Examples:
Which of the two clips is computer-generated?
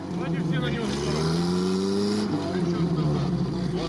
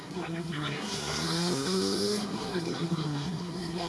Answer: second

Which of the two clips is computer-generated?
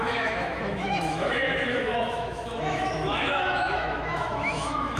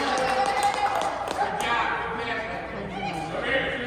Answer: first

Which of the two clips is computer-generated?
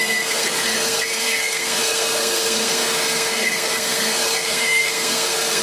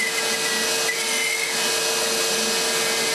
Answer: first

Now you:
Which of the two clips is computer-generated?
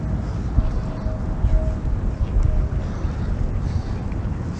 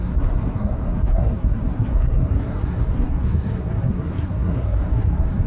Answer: second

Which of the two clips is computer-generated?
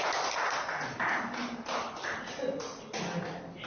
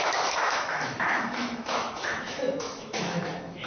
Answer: second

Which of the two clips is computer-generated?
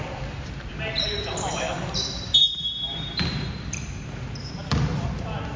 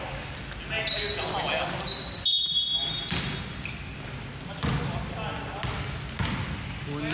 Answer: first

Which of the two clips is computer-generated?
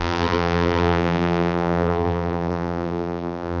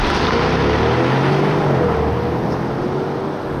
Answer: first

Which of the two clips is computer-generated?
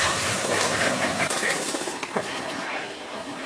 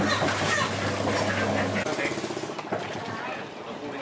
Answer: first